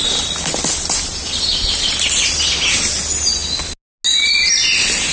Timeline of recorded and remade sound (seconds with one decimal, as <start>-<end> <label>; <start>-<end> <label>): 0.0-5.1 recorded